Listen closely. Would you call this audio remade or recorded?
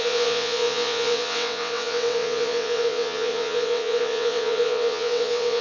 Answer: remade